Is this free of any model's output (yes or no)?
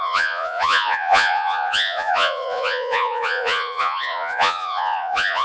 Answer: no